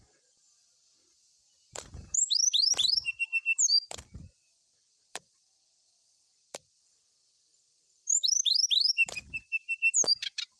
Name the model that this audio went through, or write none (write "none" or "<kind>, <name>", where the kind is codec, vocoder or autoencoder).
vocoder, BigVGAN v2